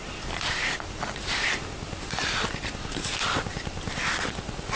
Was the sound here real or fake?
real